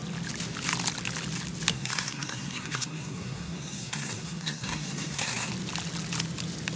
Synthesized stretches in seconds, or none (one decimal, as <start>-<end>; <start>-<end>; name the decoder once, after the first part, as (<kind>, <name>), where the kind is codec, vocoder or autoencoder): 1.7-5.5 (codec, SNAC)